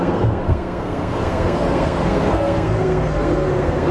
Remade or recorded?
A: remade